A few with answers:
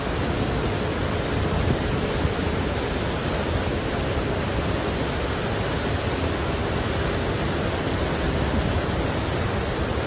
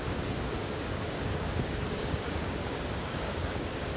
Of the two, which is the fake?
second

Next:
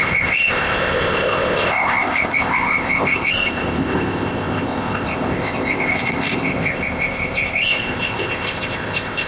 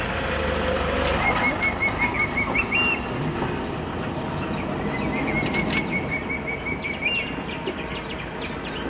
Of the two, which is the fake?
first